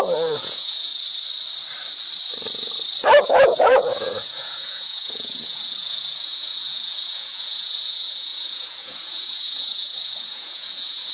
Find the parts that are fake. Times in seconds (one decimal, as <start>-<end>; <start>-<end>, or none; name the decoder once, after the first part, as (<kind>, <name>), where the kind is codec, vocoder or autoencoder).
0.0-0.9 (vocoder, Vocos); 3.2-11.1